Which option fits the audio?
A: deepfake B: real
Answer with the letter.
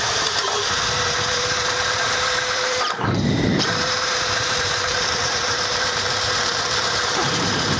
A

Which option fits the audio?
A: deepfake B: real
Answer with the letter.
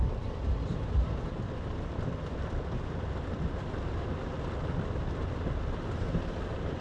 A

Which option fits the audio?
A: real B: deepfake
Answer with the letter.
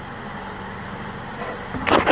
A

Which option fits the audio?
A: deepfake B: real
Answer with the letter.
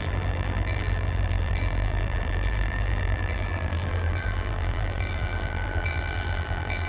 A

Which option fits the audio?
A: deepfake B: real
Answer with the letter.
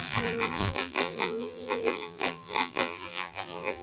A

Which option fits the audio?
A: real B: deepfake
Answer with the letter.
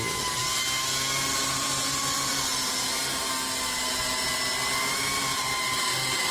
A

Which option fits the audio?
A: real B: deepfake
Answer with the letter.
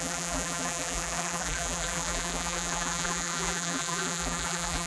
B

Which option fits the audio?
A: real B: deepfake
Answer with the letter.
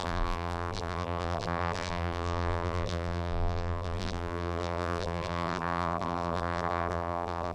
B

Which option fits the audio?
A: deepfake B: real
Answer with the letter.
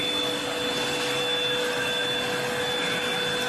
B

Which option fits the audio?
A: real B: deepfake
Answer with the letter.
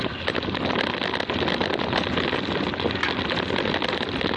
A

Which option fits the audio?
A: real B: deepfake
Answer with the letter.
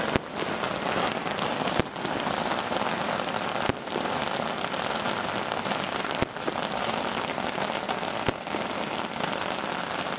A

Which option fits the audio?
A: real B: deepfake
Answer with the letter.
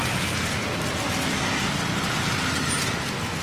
A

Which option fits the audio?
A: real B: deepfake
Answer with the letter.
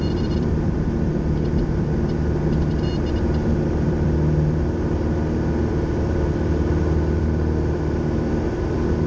B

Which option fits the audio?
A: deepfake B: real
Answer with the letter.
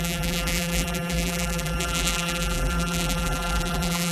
A